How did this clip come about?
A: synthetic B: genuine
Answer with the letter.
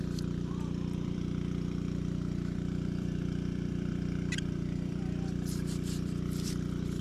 A